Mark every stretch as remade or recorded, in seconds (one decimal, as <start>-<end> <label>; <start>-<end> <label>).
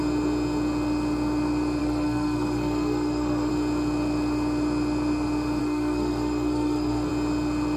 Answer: 0.0-1.8 recorded; 1.8-3.5 remade; 3.5-5.6 recorded; 5.6-7.1 remade; 7.1-7.8 recorded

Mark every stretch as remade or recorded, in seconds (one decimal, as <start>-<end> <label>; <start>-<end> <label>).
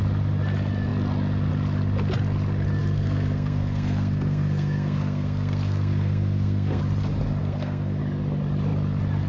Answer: 0.0-2.8 recorded; 2.8-6.8 remade; 6.8-7.4 recorded; 7.4-8.0 remade; 8.0-9.3 recorded